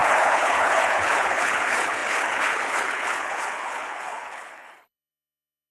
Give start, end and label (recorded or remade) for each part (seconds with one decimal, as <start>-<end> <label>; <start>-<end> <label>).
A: 0.0-5.7 remade